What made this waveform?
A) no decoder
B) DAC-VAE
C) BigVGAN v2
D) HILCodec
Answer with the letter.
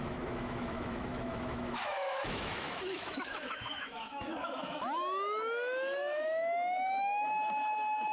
B